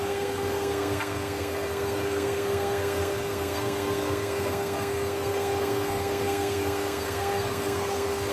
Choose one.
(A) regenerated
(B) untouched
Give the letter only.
A